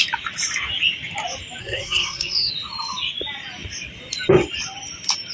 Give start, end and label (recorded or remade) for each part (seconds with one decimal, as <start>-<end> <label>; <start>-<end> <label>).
0.0-1.6 recorded; 1.6-2.5 remade; 2.5-5.3 recorded